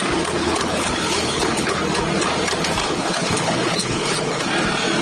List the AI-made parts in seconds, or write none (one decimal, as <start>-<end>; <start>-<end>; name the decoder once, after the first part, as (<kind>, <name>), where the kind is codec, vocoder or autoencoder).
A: 0.4-1.8 (codec, HILCodec); 2.8-4.5